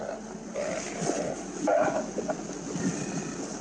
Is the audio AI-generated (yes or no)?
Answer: no